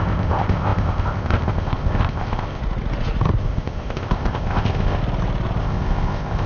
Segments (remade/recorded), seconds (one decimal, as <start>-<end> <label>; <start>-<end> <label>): 0.0-2.6 remade; 2.6-3.4 recorded; 3.4-5.0 remade; 5.0-5.6 recorded; 5.6-6.5 remade